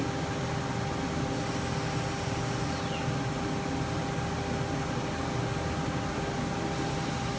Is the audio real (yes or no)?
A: yes